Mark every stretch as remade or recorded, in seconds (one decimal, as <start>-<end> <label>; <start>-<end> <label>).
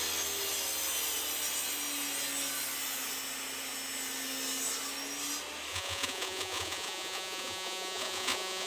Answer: 0.0-5.7 recorded; 5.7-8.7 remade